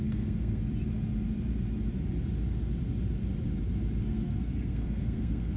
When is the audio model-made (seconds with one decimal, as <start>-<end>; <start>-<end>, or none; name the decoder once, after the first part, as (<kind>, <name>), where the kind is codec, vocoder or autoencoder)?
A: 0.0-0.6 (codec, SNAC); 4.0-5.6